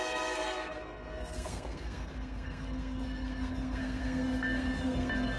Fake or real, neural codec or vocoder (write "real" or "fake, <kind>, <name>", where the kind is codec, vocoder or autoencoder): fake, codec, SNAC